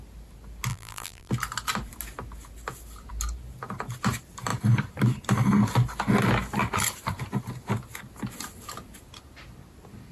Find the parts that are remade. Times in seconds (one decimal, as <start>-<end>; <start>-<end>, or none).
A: 0.7-1.3